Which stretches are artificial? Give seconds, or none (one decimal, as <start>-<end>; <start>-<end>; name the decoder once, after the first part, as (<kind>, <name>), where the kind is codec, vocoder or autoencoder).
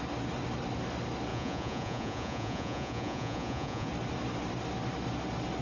1.3-3.9 (vocoder, Vocos)